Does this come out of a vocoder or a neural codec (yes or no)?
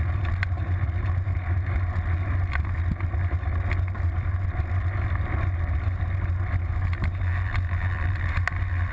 no